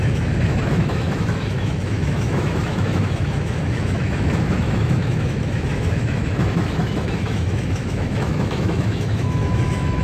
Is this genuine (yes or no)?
no